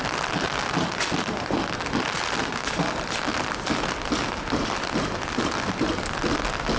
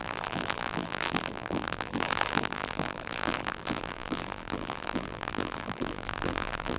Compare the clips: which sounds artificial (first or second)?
second